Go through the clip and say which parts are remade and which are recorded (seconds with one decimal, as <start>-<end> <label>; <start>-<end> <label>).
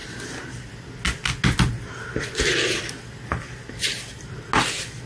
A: 0.0-5.1 recorded